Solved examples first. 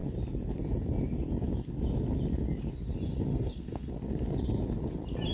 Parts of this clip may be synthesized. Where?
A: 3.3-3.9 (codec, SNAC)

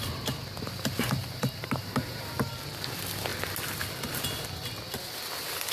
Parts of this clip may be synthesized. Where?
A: 1.2-2.5 (vocoder, BigVGAN v2)

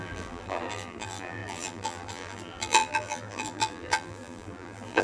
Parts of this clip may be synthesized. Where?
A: 0.0-5.0 (vocoder, BigVGAN v2)

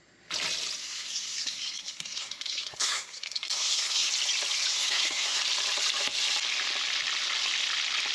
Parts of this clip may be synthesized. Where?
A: 0.8-4.1 (codec, SNAC); 4.7-5.4

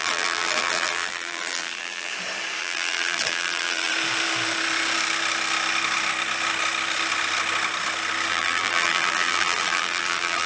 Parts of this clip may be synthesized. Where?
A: 0.0-2.1 (vocoder, BigVGAN v2); 2.6-3.9; 8.3-10.5

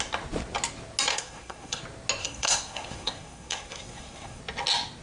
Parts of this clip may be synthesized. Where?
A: 1.1-1.8 (codec, SNAC); 2.2-4.4